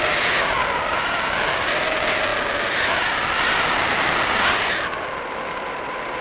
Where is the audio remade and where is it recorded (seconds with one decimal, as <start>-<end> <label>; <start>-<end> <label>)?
0.0-6.2 recorded